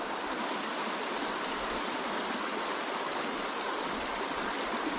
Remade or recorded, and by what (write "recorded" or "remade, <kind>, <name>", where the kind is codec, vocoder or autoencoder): recorded